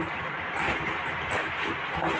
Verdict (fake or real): real